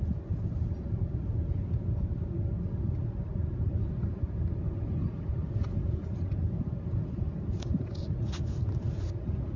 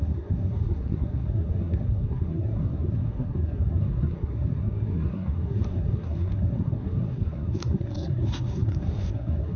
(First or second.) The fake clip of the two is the second